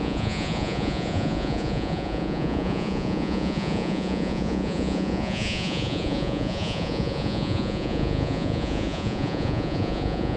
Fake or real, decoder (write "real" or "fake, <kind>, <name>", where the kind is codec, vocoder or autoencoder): fake, vocoder, Vocos